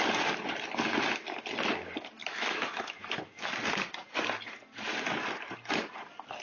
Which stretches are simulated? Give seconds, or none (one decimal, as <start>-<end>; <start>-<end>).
2.2-3.5